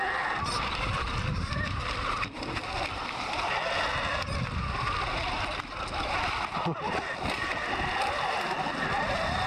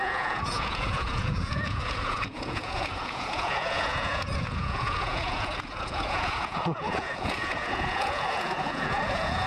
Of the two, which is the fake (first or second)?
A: second